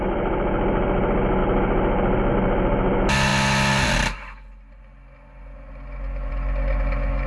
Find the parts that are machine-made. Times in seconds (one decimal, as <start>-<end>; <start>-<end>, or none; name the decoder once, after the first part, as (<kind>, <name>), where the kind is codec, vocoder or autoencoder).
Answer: none

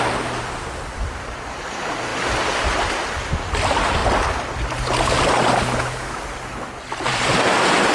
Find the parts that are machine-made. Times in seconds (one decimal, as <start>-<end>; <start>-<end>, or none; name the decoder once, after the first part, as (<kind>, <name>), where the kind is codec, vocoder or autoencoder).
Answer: none

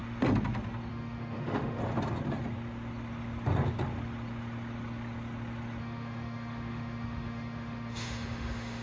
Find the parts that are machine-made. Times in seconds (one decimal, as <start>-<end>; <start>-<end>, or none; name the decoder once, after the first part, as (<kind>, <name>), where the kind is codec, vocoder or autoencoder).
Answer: 0.9-1.8 (autoencoder, DAC-VAE); 5.8-8.8

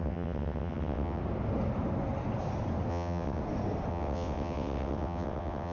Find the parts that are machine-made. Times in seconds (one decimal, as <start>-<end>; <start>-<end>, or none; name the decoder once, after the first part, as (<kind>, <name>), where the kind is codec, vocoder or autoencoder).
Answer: 0.0-1.2 (vocoder, WaveNeXt); 2.9-3.4; 3.9-5.7